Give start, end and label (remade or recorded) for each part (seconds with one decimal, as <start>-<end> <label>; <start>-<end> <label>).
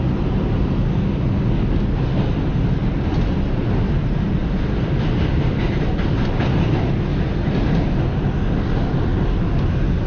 0.0-10.1 recorded